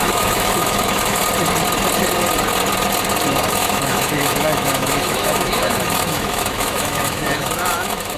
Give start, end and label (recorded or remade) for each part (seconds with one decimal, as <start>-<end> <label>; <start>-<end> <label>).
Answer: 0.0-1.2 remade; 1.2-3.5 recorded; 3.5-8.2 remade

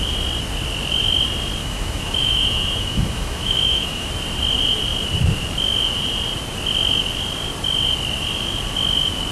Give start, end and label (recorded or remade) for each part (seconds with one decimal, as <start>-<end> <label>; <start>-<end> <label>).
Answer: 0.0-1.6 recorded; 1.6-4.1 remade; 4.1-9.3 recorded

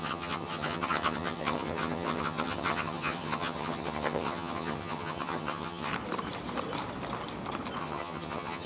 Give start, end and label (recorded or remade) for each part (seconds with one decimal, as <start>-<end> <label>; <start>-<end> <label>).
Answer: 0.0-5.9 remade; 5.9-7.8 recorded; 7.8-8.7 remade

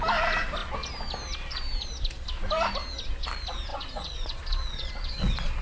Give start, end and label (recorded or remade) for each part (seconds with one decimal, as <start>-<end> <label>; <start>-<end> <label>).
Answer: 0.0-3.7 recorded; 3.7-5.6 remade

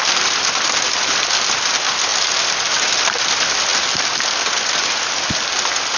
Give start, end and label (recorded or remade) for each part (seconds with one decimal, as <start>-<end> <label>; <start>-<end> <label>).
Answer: 0.0-6.0 recorded

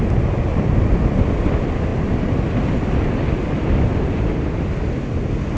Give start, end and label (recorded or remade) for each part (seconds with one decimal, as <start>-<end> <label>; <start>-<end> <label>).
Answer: 0.0-5.6 recorded

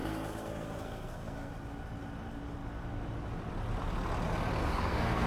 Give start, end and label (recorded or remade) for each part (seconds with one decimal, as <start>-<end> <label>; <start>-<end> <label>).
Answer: 0.0-1.5 remade; 1.5-4.6 recorded; 4.6-5.3 remade